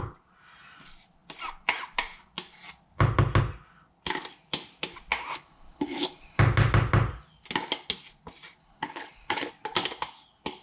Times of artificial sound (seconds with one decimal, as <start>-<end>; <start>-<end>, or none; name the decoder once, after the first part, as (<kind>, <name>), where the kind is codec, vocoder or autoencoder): 5.3-6.4 (codec, HILCodec); 8.6-9.5

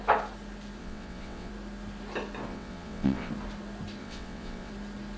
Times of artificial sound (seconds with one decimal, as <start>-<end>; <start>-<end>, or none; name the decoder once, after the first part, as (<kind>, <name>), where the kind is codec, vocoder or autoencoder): 0.8-1.5 (vocoder, WaveNeXt); 2.5-3.3; 4.0-4.7

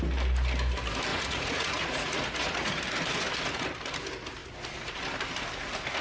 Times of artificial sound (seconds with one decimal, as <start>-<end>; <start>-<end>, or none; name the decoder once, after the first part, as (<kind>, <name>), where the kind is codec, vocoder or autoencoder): 1.1-2.8 (vocoder, Vocos)